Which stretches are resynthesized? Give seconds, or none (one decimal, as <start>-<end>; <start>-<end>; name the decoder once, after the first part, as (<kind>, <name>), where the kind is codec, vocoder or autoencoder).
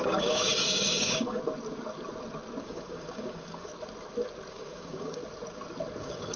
0.0-1.4 (codec, DAC); 2.6-3.7; 4.5-5.2; 6.0-6.4